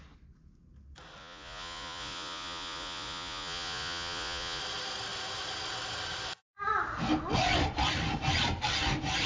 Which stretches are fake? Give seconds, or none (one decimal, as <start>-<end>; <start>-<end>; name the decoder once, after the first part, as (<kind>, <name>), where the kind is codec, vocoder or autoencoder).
1.2-4.6 (vocoder, Vocos)